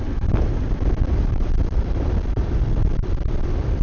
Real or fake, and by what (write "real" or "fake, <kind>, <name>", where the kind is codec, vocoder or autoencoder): fake, vocoder, BigVGAN v2